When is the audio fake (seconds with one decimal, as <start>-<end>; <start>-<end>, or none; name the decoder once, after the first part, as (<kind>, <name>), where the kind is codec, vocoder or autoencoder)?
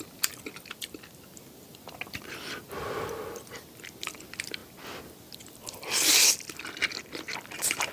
none